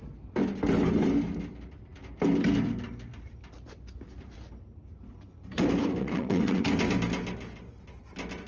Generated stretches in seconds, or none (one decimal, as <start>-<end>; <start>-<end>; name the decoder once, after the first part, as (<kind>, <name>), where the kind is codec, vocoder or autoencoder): 6.0-6.6 (vocoder, WaveNeXt)